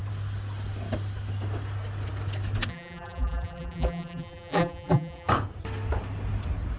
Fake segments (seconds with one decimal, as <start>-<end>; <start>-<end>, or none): 2.7-5.3